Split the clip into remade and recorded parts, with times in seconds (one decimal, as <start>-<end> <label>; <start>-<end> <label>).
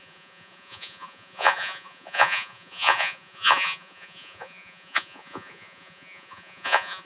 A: 0.0-7.1 remade